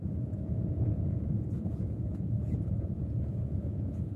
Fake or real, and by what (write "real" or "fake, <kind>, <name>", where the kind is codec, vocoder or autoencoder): fake, vocoder, Vocos